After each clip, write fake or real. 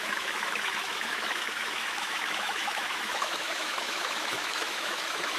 fake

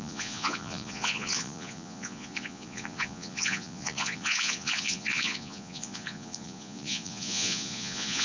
fake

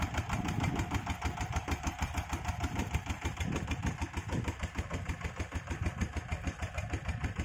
fake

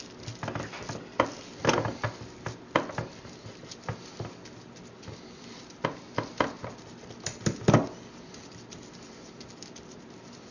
real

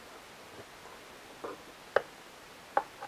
real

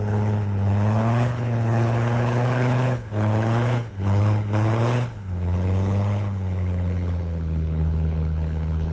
fake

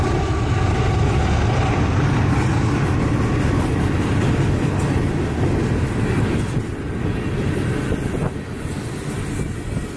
real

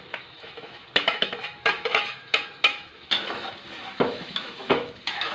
fake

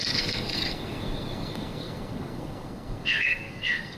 fake